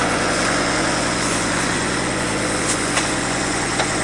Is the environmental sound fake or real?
fake